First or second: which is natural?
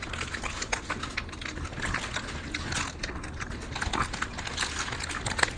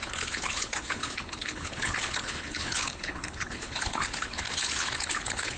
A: first